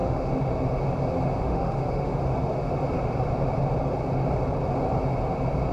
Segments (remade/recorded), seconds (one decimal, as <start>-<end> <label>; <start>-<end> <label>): 0.0-0.5 remade; 0.5-1.5 recorded; 1.5-2.2 remade; 2.2-5.7 recorded